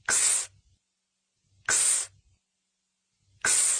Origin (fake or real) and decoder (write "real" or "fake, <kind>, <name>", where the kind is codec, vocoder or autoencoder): real